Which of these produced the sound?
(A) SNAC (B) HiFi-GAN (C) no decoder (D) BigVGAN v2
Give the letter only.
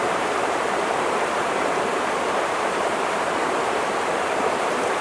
D